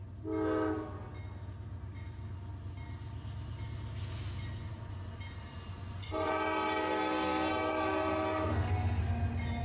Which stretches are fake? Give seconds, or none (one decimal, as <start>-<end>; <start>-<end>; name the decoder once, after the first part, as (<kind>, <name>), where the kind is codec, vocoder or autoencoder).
6.0-9.0 (codec, SNAC)